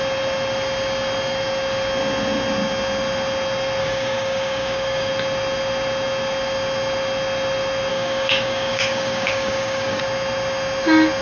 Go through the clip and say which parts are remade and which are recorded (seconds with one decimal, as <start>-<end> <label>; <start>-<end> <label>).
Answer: 0.0-3.8 recorded; 3.8-5.1 remade; 5.1-7.9 recorded; 7.9-10.0 remade; 10.0-11.2 recorded